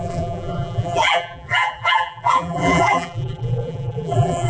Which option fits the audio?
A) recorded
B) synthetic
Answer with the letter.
B